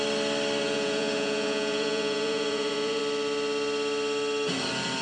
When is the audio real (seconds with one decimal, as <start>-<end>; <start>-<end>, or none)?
0.0-0.6; 3.0-5.0